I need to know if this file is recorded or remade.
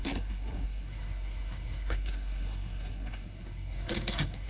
remade